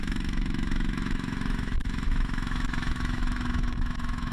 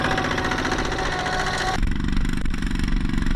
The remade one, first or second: first